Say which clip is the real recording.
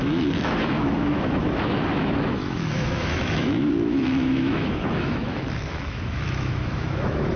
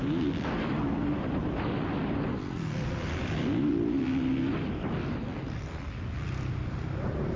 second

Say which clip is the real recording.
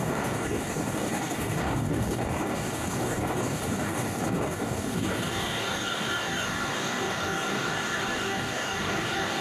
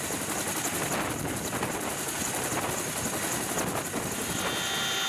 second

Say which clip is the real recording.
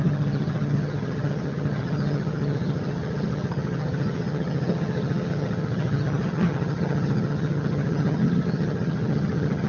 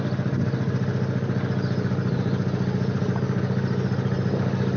second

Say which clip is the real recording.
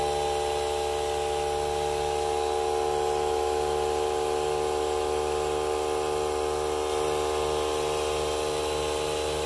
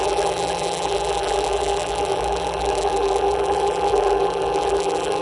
first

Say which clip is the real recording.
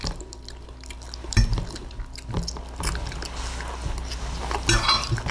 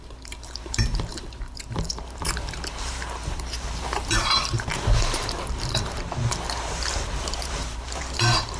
first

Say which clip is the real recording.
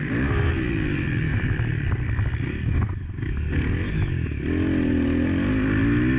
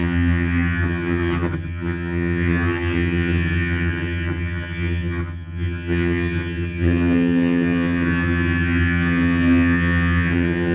first